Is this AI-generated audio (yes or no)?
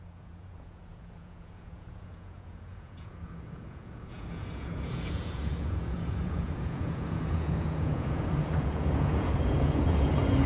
yes